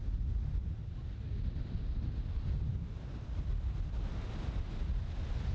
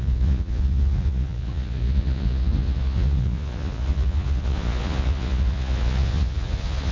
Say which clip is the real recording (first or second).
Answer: first